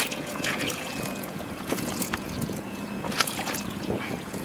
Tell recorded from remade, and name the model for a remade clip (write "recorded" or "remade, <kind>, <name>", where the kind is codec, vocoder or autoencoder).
remade, vocoder, Vocos